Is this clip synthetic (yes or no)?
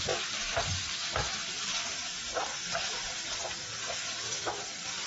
no